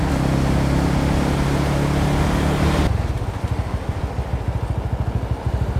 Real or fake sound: real